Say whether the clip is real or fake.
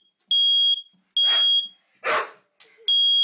real